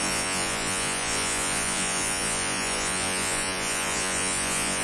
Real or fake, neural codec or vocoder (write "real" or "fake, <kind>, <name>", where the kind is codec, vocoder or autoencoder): fake, vocoder, Vocos